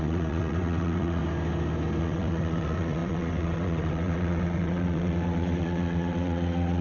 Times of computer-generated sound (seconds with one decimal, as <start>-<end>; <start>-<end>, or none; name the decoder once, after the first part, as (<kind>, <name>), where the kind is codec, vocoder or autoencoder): 0.0-1.2 (vocoder, WaveNeXt); 2.0-6.8